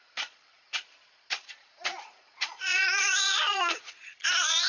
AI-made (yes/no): yes